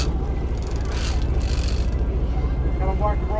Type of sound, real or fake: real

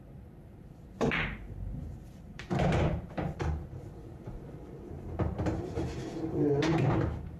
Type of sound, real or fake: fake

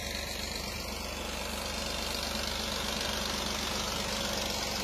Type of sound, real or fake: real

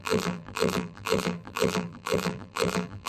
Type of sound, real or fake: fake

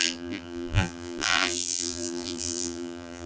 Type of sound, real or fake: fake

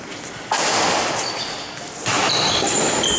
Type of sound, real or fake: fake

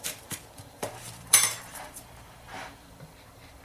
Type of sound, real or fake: fake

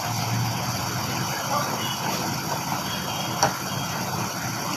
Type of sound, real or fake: real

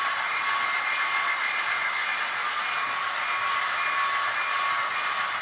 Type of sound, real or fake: fake